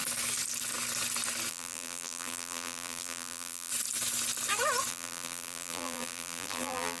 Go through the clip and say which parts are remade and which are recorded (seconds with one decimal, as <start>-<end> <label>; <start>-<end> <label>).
0.0-1.5 recorded; 1.5-3.7 remade; 3.7-4.9 recorded; 4.9-7.0 remade